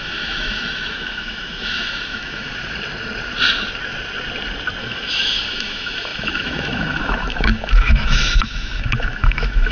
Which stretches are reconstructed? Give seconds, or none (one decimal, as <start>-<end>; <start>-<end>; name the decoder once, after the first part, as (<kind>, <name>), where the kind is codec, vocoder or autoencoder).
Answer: 0.0-2.5 (autoencoder, DAC-VAE); 4.8-9.7